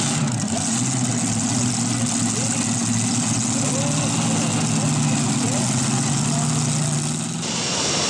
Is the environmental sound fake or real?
real